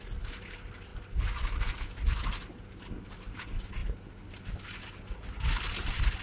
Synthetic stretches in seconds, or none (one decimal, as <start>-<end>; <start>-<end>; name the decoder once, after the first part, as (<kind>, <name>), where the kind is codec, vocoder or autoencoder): none